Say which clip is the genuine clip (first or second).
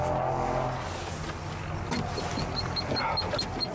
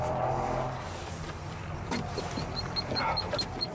first